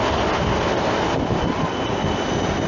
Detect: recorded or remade recorded